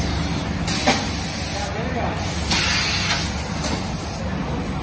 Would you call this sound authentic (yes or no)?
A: yes